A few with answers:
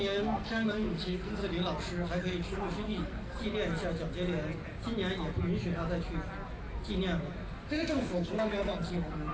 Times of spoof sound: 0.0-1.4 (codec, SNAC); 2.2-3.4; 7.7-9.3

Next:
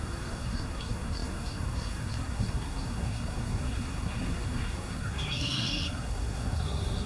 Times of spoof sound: 0.0-7.1 (codec, SNAC)

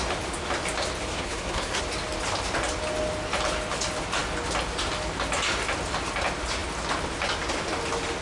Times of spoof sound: 1.1-1.8 (codec, SNAC)

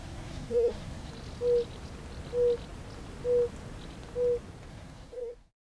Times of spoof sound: 0.0-1.1 (codec, SNAC); 4.7-5.8

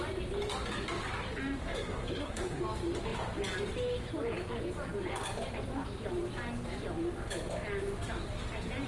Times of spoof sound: 1.6-2.6 (codec, SNAC)

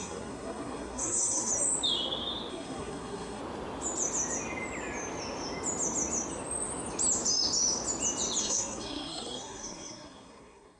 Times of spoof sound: 0.0-1.5 (codec, SNAC); 2.5-3.4; 8.4-10.8

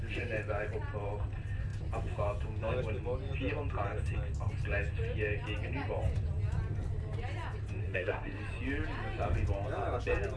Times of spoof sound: 7.8-8.4 (codec, SNAC)

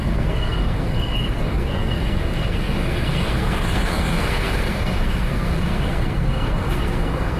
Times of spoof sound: 0.0-7.4 (codec, SNAC)